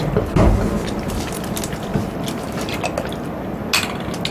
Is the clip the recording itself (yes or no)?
yes